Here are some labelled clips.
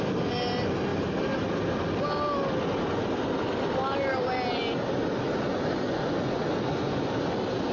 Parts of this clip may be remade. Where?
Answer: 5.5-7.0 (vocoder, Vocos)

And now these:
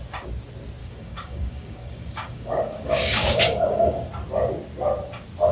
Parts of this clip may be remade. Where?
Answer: 0.8-4.1 (codec, DAC)

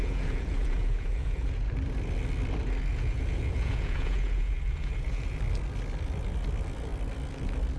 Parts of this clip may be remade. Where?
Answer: 0.0-1.6 (vocoder, Vocos); 2.9-5.4

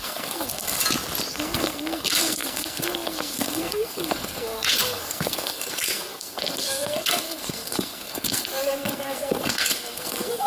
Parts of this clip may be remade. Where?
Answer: 0.0-0.8 (codec, SNAC); 1.3-10.5

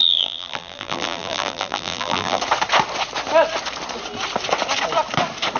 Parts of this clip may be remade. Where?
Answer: 0.0-2.4 (vocoder, BigVGAN v2)